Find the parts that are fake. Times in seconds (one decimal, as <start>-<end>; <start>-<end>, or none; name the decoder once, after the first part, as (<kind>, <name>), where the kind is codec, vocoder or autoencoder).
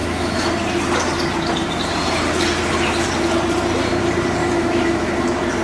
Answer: 0.0-0.5 (autoencoder, DAC-VAE); 4.4-5.1